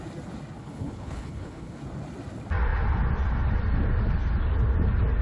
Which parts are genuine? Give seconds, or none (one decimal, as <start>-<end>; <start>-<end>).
0.0-0.6; 1.8-5.2